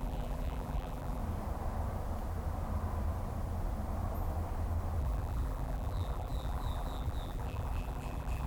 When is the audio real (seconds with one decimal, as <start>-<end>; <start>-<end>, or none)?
1.2-5.0